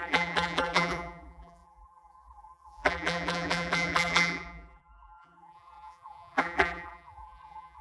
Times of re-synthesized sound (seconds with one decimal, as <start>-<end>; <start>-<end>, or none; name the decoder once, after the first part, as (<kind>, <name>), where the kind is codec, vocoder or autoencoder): 0.0-7.8 (vocoder, BigVGAN v2)